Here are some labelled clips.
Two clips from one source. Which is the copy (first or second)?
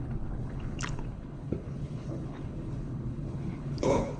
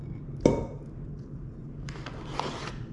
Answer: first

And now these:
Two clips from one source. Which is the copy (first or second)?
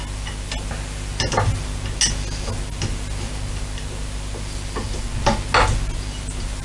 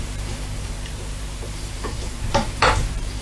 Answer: second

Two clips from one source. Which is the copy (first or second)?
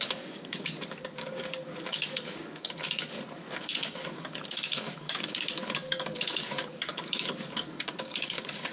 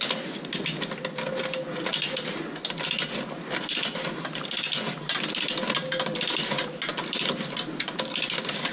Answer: first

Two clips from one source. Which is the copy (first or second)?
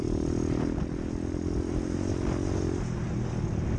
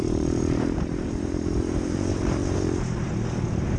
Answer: second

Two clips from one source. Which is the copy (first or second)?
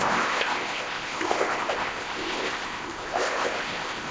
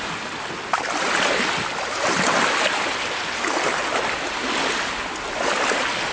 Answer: first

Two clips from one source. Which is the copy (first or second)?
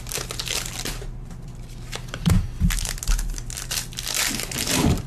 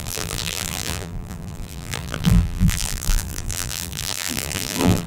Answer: second